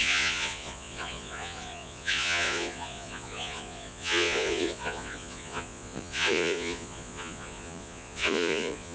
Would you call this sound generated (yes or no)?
yes